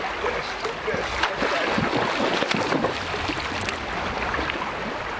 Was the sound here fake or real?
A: real